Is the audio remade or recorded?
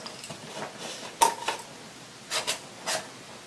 recorded